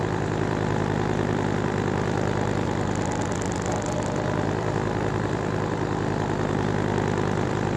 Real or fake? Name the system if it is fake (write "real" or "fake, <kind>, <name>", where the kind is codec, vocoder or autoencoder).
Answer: fake, vocoder, BigVGAN v2